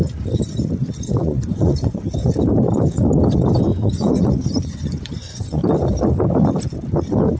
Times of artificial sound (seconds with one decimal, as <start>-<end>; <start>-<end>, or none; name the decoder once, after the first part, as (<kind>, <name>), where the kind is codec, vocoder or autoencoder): 1.1-2.0 (vocoder, Vocos); 3.7-5.6